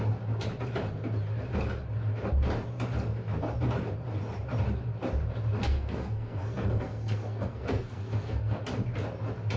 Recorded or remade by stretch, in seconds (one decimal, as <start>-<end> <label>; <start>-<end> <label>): 0.0-5.6 recorded; 5.6-8.6 remade; 8.6-9.6 recorded